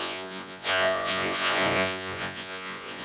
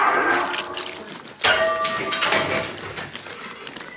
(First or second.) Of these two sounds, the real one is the second